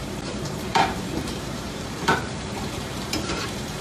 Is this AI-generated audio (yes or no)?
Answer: yes